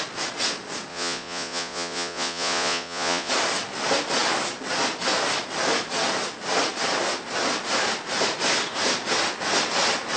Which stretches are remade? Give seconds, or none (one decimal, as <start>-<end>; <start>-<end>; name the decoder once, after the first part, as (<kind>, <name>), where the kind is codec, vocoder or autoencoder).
0.9-3.3 (vocoder, Vocos)